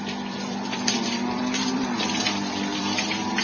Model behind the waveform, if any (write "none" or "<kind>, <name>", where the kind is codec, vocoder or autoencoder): vocoder, BigVGAN v2